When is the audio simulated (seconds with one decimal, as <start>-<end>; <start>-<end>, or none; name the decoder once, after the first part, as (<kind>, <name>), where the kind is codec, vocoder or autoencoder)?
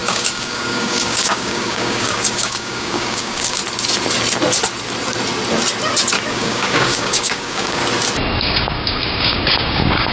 0.0-3.6 (codec, DAC); 6.3-7.8; 8.4-10.1